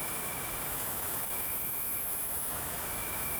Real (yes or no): no